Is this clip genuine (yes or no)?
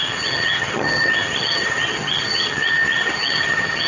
no